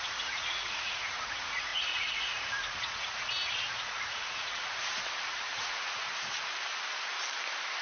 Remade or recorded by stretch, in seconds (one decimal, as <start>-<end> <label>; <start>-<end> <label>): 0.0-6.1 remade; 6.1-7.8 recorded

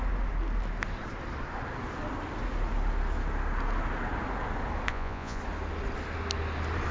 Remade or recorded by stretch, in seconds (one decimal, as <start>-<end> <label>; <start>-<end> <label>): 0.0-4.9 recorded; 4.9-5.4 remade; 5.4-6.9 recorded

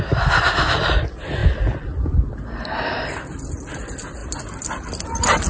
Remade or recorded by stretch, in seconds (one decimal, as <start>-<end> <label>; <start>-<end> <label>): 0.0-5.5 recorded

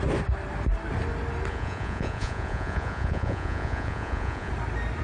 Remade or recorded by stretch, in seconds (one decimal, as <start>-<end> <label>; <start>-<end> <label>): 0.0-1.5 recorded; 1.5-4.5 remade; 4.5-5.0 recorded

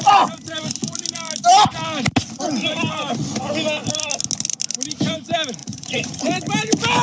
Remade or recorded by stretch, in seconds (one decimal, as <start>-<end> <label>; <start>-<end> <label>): 0.0-5.6 recorded; 5.6-6.2 remade; 6.2-7.0 recorded